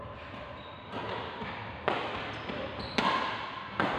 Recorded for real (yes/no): yes